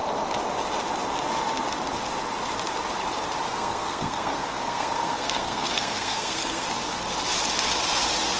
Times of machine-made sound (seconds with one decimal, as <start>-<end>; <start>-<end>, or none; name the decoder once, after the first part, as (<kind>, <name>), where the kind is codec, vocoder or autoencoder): 3.5-6.7 (codec, SNAC)